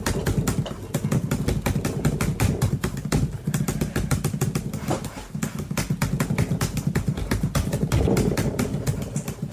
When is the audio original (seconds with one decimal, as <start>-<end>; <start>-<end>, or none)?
0.0-9.5